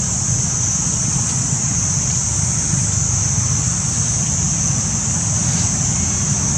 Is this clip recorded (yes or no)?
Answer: yes